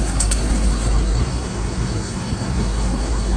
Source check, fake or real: fake